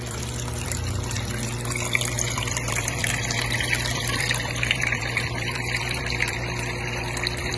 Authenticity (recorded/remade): remade